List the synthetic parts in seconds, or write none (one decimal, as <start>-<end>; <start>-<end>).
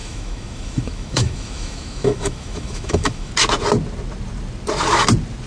0.0-3.3